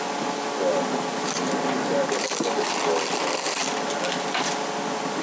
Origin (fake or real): real